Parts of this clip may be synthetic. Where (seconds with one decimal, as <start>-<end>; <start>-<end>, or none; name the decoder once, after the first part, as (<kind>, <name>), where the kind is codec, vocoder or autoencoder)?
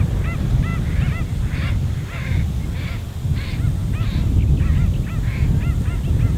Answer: none